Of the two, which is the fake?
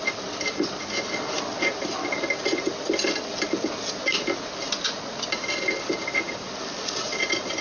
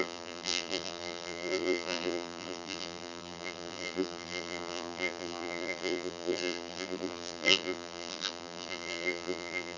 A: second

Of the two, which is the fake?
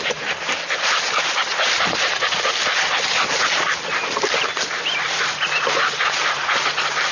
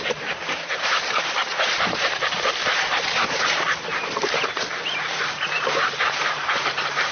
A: second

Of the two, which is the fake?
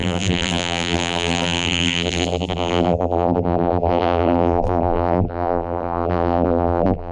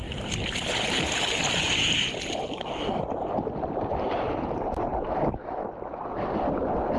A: first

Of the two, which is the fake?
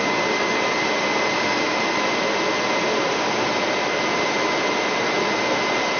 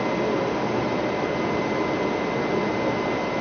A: first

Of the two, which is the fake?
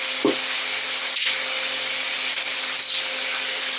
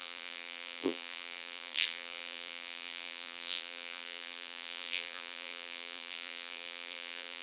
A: second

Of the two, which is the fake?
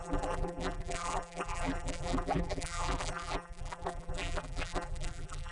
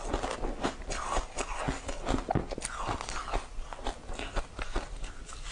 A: first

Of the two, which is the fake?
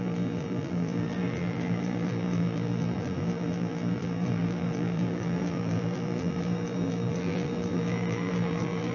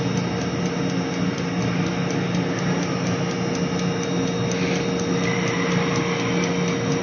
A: first